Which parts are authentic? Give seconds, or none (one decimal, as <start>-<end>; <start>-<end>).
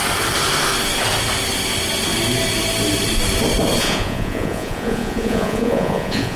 0.0-3.8